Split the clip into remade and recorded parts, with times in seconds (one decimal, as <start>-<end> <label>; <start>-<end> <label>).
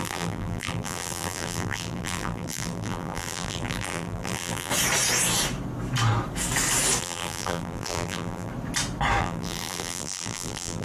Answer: 0.0-4.7 remade; 4.7-7.0 recorded; 7.0-8.5 remade; 8.5-9.2 recorded; 9.2-10.8 remade